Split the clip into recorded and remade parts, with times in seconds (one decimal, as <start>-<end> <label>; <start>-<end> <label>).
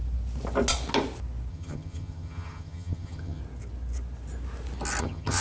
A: 0.0-1.5 recorded; 1.5-3.4 remade; 3.4-5.0 recorded; 5.0-5.4 remade